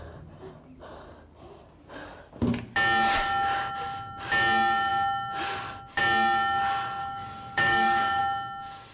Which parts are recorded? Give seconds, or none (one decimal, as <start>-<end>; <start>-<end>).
0.0-7.0; 8.2-8.9